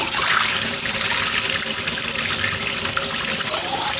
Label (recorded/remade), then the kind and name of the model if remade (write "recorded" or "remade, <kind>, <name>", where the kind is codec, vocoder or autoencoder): recorded